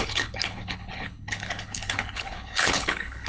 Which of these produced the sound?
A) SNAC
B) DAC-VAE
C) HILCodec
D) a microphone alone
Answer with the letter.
C